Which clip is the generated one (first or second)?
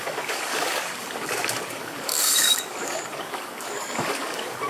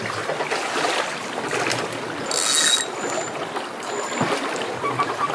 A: first